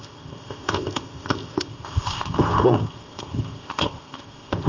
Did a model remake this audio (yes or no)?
yes